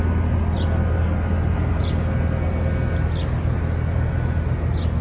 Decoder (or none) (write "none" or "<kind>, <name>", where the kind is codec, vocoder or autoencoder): none